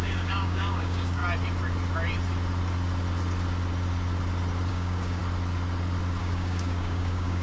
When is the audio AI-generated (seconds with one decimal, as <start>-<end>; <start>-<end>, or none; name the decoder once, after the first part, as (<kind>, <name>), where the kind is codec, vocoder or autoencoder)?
0.0-1.2 (codec, DAC); 4.7-5.2; 6.2-7.4